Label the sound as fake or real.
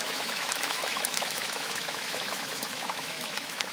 fake